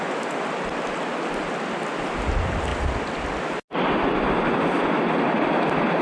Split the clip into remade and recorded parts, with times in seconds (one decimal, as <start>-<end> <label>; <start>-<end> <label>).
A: 0.0-6.0 recorded